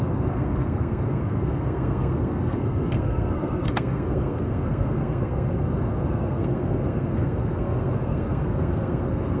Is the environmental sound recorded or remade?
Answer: remade